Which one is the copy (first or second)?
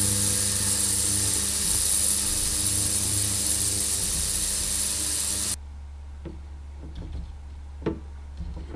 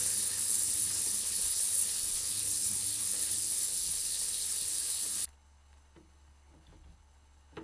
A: second